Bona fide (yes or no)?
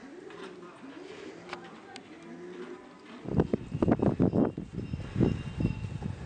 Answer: yes